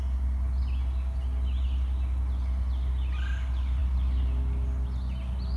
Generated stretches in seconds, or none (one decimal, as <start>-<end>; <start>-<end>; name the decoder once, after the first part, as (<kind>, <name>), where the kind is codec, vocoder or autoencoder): none